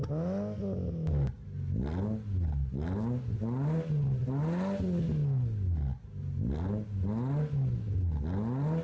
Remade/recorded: recorded